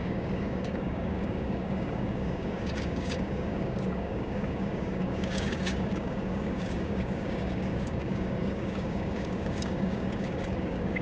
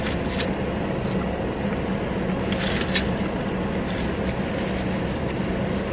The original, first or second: second